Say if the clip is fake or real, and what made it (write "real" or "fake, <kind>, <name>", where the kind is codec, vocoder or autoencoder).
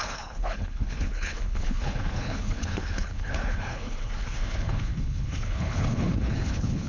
fake, codec, HILCodec